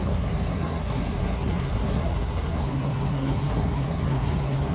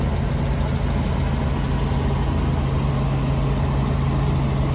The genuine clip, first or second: second